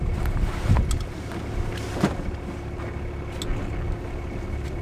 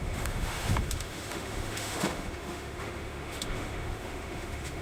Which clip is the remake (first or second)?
second